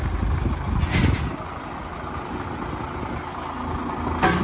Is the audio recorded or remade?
recorded